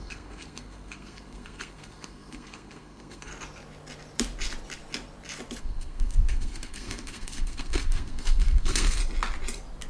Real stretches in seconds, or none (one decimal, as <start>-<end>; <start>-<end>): 3.3-5.6; 9.0-9.9

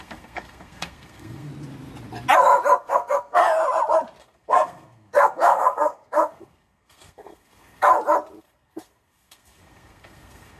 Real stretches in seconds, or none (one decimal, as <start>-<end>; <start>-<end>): 1.5-2.8; 3.4-4.2; 7.9-8.4

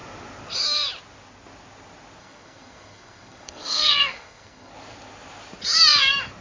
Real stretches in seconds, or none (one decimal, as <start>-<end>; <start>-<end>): 0.0-2.2; 4.7-6.4

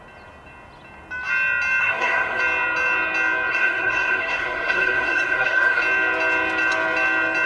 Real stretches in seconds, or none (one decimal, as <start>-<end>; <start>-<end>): 0.0-1.8; 2.4-3.5; 5.8-7.5

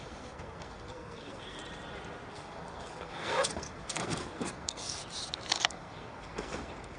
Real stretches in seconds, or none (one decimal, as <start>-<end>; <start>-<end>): 1.6-2.3; 5.0-5.6

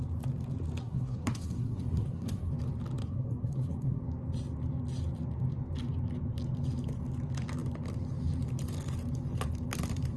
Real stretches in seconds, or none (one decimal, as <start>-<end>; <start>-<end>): 0.0-0.8; 2.5-3.0; 4.0-10.2

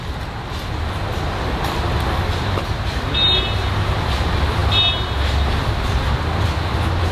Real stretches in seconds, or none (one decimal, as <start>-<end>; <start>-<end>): 0.0-7.1